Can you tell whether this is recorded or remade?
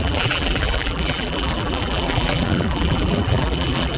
remade